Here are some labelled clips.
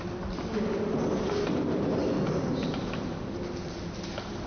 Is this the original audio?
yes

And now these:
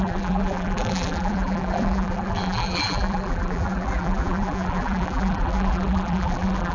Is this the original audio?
no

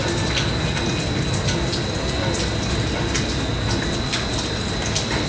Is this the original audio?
yes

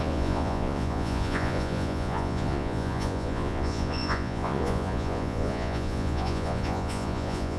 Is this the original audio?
no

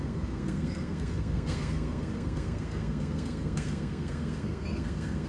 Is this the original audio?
no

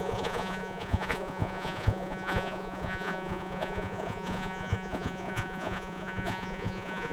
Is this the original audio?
no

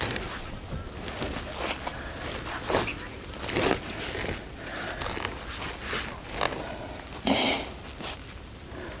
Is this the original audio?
yes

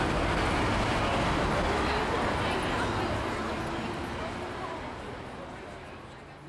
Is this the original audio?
yes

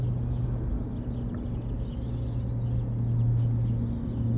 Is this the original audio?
yes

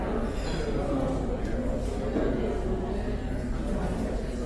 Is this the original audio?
yes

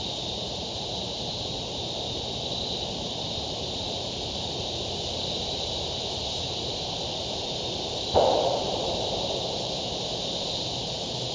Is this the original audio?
no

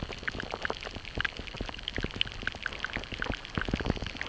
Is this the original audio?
yes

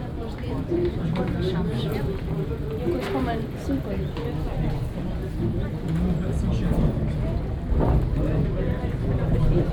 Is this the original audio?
yes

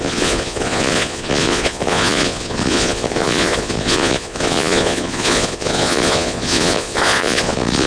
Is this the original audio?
no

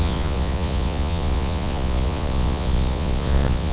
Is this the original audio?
no